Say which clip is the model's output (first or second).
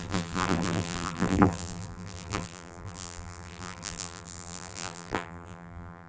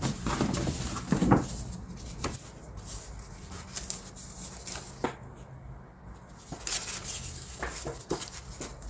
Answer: first